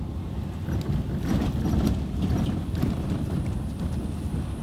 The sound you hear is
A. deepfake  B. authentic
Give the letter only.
B